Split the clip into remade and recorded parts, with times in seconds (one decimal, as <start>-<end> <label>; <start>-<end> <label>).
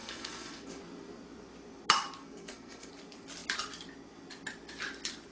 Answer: 0.0-0.8 remade; 0.8-2.2 recorded; 2.2-2.9 remade; 2.9-5.3 recorded